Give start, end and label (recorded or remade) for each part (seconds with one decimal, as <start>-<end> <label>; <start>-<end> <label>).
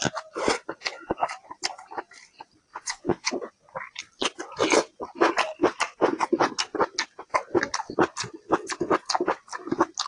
0.0-2.7 recorded; 2.7-3.3 remade; 3.3-10.1 recorded